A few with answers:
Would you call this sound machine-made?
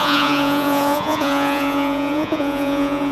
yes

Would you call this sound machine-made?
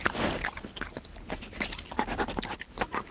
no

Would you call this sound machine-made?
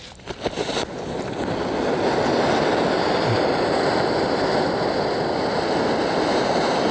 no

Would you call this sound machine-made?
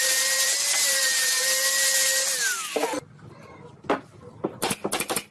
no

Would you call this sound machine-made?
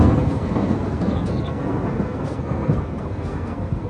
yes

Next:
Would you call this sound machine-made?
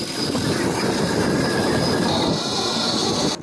no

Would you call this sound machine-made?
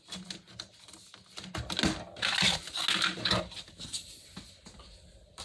no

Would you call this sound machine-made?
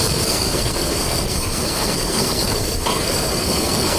yes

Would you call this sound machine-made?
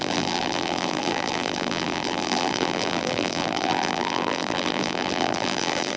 yes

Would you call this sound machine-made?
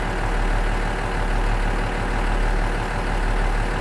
no